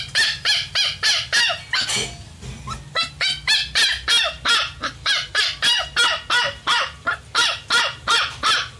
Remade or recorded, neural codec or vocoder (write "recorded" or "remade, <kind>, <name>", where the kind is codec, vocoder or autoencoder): recorded